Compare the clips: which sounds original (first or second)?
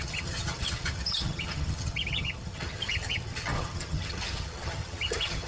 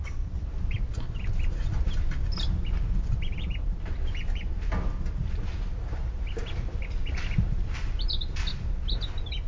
second